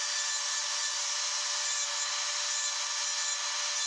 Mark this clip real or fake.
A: real